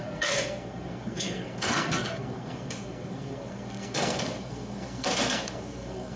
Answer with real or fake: fake